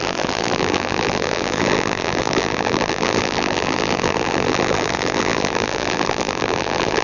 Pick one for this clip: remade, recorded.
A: remade